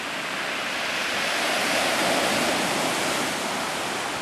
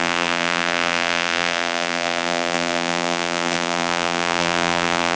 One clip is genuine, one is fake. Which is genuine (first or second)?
first